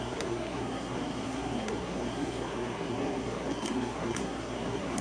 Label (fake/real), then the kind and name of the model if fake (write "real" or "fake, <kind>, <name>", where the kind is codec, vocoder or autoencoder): fake, codec, SNAC